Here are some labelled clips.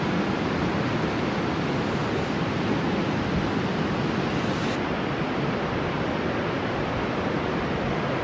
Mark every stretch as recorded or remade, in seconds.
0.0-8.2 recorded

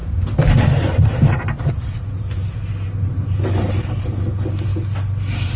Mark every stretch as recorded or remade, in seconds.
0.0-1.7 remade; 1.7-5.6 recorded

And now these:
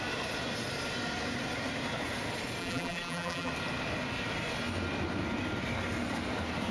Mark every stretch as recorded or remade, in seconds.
0.0-2.6 recorded; 2.6-3.5 remade; 3.5-6.7 recorded